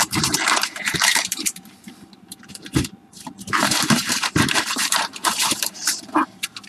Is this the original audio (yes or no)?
no